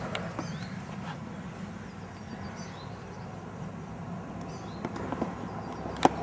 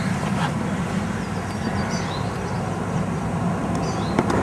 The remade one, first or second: second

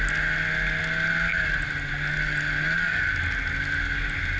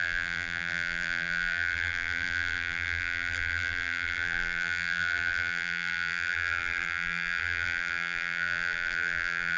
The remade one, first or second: second